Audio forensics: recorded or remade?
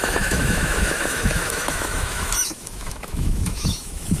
remade